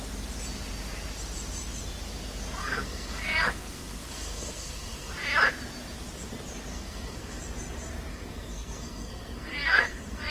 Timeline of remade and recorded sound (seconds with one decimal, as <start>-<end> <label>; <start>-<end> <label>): 0.0-2.6 recorded; 2.6-5.1 remade; 5.1-6.7 recorded; 6.7-7.4 remade; 7.4-8.1 recorded; 8.1-10.3 remade